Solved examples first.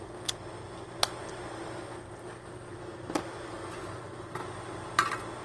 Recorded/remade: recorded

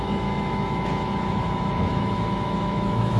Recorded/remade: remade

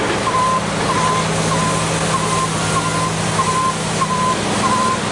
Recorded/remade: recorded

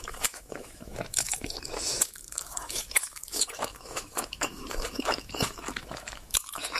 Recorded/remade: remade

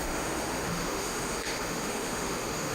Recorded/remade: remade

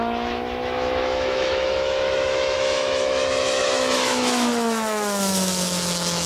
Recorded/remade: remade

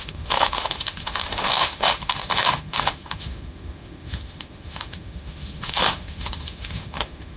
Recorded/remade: remade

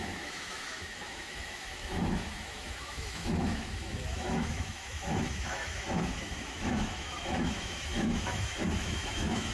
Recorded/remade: remade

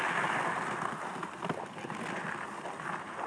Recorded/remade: recorded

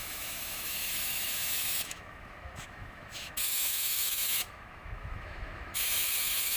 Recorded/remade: remade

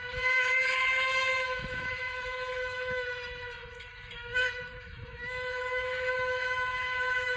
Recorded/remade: remade